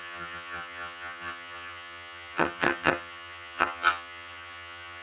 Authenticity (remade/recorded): remade